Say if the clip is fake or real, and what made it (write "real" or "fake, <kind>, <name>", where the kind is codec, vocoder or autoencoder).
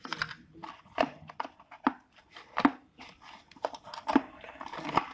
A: fake, vocoder, BigVGAN v2